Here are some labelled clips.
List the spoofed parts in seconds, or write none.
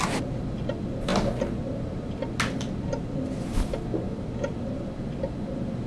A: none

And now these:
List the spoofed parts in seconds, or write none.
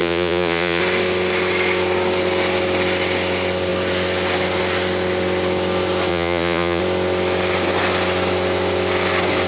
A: 0.0-0.8 (vocoder, Vocos); 6.1-6.8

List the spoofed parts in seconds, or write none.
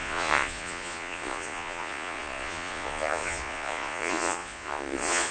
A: 0.0-5.3 (vocoder, Vocos)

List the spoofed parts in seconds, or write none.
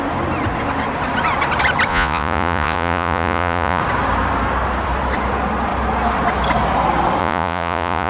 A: 1.9-3.8 (vocoder, Vocos); 7.2-8.1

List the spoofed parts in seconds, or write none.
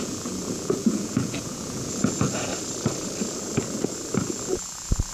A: 0.0-2.5 (vocoder, Vocos); 4.3-5.1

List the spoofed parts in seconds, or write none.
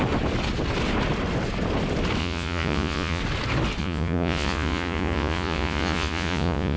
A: 2.2-3.2 (vocoder, Vocos); 3.8-6.8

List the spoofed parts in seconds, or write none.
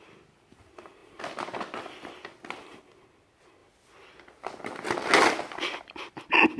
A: none